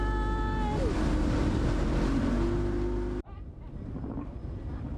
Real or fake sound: real